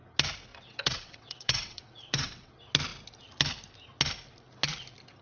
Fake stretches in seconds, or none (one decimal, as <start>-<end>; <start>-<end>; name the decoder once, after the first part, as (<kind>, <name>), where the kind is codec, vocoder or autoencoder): 0.5-2.5 (vocoder, WaveNeXt)